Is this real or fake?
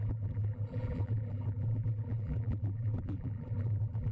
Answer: fake